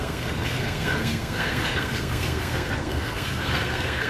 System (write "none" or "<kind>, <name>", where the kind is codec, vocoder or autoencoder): codec, SNAC